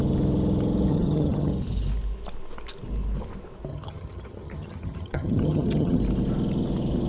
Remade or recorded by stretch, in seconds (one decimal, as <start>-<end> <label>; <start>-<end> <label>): 0.0-0.9 recorded; 0.9-1.5 remade; 1.5-3.7 recorded; 3.7-6.0 remade; 6.0-7.1 recorded